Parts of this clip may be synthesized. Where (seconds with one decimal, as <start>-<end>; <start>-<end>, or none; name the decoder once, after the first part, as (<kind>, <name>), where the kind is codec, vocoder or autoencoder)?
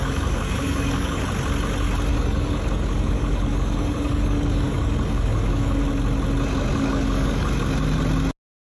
0.0-1.2 (codec, DAC); 2.1-5.9; 6.7-7.5